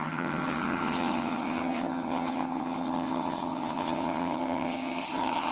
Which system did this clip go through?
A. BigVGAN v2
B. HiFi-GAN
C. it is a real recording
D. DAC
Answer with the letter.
B